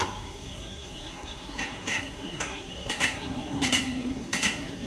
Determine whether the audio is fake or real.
fake